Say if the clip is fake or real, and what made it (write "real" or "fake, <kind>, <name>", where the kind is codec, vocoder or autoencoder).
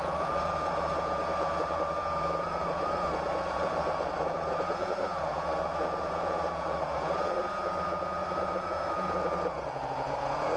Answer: fake, vocoder, Vocos